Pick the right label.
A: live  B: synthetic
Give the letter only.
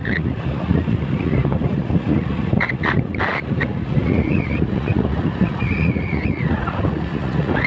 B